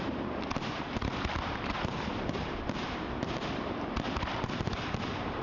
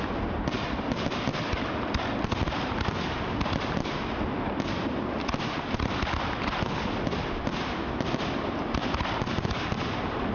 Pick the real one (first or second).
second